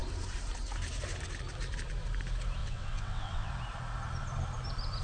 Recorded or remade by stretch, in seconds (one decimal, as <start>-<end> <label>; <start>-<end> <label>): 0.0-2.6 recorded; 2.6-3.5 remade; 3.5-5.0 recorded